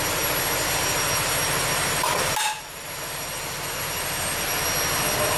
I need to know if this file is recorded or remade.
recorded